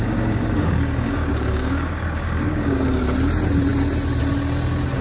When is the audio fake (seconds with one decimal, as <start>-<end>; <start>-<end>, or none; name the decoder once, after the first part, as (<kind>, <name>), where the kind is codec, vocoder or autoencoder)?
0.0-3.0 (codec, DAC)